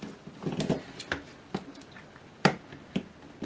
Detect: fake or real real